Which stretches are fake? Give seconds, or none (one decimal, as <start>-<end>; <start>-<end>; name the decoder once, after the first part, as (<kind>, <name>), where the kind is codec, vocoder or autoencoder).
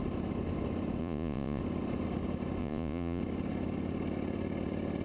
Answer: 1.0-1.6 (vocoder, Vocos); 2.6-3.2